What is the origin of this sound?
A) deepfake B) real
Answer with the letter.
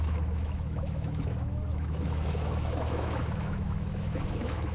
A